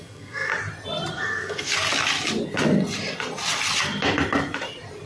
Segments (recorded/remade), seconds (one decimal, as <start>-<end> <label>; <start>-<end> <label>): 0.0-0.5 remade; 0.5-1.1 recorded; 1.1-1.7 remade; 1.7-5.1 recorded